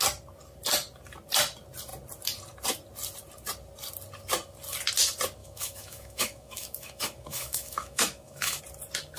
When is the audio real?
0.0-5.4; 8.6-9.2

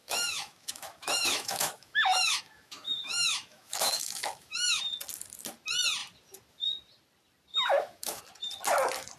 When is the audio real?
4.8-7.5; 8.2-9.2

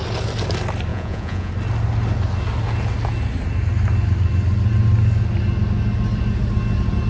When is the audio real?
0.0-0.9; 1.5-7.1

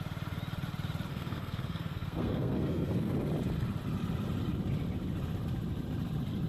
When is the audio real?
0.0-1.1; 3.1-6.5

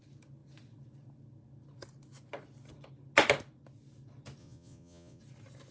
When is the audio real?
0.0-4.4; 5.2-5.7

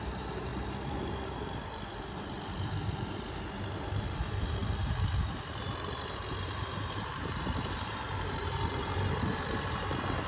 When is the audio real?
0.5-4.0

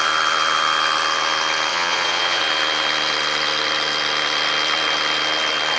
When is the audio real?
0.0-1.7; 2.4-5.8